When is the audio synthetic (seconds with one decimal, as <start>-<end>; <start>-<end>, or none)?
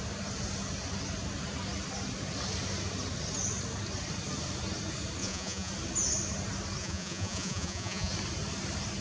5.2-5.7; 6.8-8.1